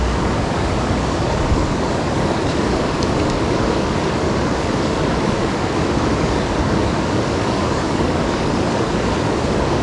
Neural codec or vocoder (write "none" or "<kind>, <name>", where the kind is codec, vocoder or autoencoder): codec, DAC